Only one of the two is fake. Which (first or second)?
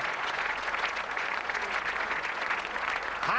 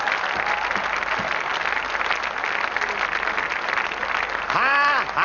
first